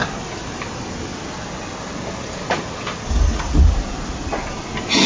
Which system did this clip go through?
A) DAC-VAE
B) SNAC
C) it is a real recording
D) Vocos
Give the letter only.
C